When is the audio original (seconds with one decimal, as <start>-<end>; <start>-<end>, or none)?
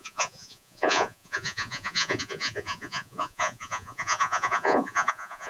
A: none